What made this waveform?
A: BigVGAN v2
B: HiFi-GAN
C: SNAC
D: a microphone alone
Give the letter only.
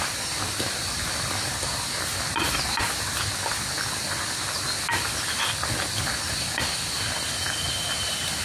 D